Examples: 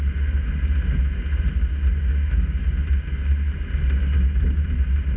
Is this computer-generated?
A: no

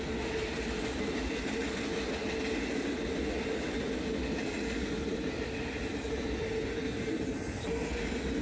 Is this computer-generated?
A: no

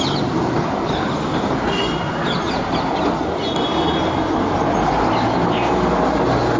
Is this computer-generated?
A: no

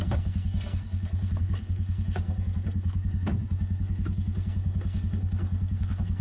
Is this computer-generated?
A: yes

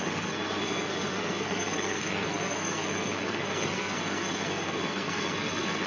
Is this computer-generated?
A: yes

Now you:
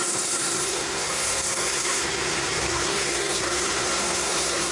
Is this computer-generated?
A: yes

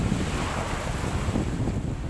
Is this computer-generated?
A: no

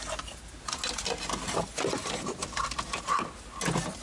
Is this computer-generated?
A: no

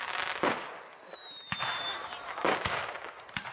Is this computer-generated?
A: no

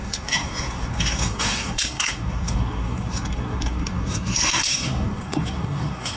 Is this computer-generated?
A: yes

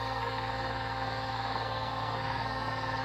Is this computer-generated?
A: yes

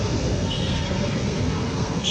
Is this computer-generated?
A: yes